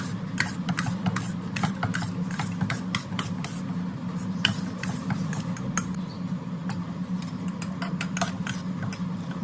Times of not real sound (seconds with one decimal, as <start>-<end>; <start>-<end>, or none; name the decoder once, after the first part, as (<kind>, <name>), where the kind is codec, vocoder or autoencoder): none